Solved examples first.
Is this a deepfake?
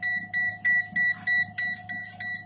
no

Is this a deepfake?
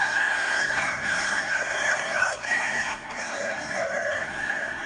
yes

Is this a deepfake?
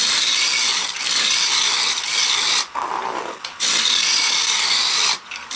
no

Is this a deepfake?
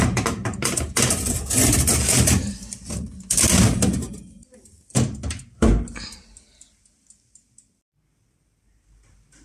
no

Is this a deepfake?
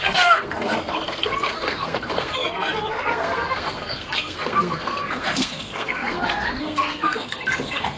yes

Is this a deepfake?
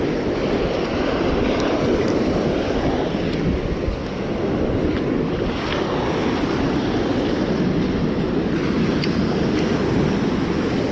no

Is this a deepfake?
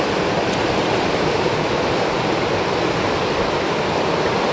no